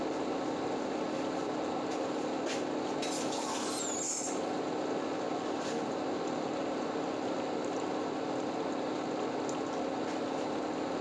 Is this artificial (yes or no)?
no